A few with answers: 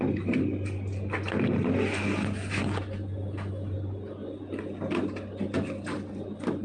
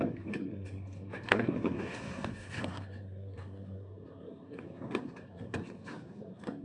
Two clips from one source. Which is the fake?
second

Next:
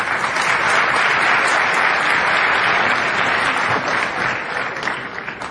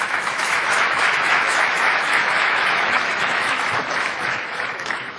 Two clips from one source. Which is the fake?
second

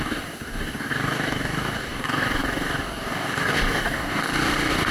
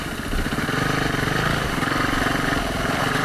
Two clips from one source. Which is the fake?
first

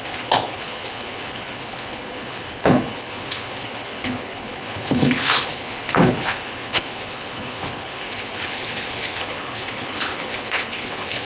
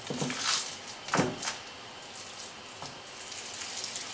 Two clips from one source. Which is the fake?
first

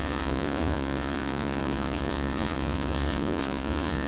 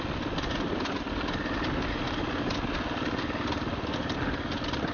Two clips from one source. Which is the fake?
first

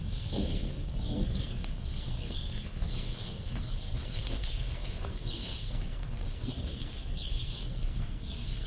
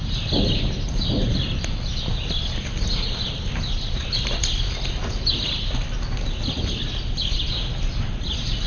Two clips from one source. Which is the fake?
first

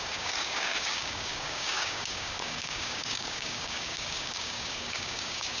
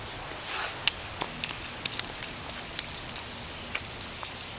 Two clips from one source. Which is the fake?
first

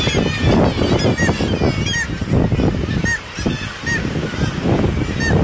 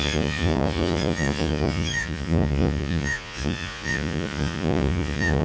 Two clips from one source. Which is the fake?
second